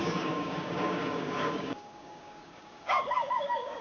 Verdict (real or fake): fake